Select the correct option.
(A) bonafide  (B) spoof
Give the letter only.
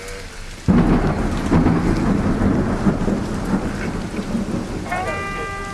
A